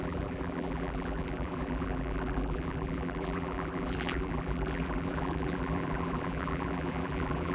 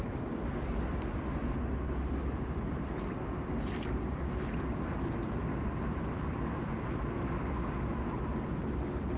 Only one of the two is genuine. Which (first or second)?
second